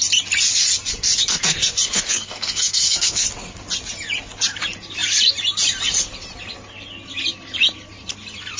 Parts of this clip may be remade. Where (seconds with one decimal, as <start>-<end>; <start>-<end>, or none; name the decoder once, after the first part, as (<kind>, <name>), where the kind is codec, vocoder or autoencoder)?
1.3-3.2 (codec, SNAC)